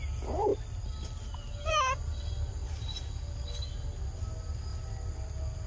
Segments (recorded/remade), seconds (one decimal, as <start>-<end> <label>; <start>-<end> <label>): 0.0-5.7 recorded